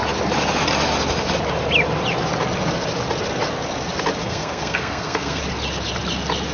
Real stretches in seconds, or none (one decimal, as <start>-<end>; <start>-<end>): 0.0-4.2; 5.4-6.5